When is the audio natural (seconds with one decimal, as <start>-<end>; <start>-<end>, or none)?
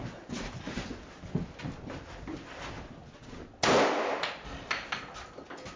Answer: 0.0-5.8